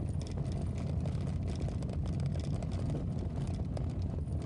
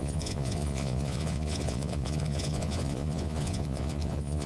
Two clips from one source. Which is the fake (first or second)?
second